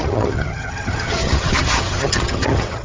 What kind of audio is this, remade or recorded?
remade